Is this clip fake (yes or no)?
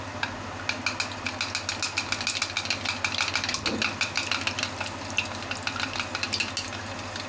no